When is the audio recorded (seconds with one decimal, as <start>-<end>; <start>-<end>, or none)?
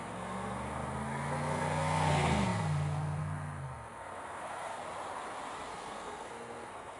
4.8-5.7